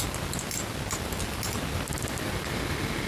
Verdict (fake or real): real